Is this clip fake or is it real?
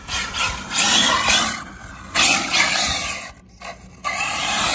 real